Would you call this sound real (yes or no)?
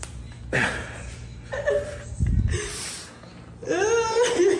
yes